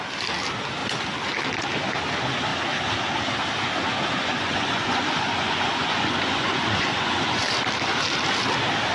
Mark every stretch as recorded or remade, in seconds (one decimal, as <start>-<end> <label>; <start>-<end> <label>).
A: 0.0-4.2 recorded; 4.2-7.4 remade; 7.4-8.9 recorded